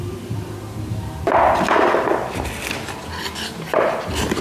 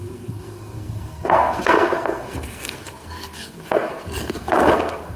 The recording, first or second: first